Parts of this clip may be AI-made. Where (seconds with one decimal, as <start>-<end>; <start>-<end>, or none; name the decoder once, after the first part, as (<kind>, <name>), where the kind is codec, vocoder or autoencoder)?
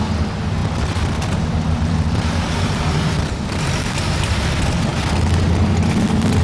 0.6-4.0 (vocoder, BigVGAN v2)